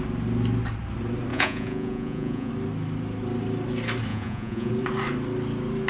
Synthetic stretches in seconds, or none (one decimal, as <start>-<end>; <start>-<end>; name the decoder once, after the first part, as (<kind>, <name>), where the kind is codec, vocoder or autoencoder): 1.3-2.5 (vocoder, Vocos); 4.1-4.7